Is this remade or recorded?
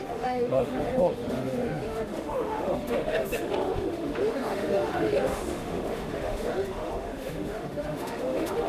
remade